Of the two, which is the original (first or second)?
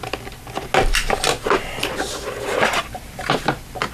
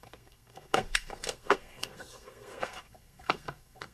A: first